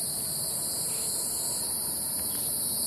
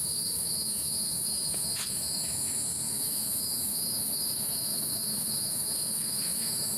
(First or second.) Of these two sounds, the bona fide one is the first